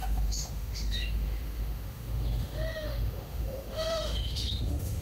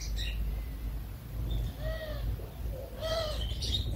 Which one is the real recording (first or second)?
second